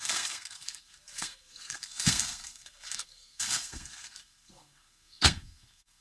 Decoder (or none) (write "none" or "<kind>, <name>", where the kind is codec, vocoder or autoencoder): codec, SNAC